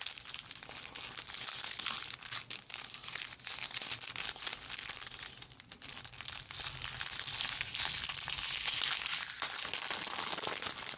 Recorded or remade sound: recorded